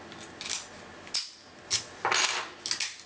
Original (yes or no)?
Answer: yes